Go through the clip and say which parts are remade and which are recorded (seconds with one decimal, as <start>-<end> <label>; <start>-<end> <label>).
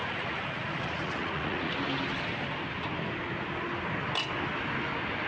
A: 0.0-1.7 remade; 1.7-5.3 recorded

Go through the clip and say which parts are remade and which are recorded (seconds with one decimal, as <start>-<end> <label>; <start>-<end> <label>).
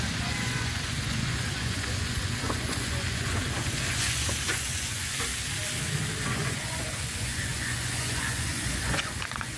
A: 0.0-5.3 remade; 5.3-6.2 recorded; 6.2-9.6 remade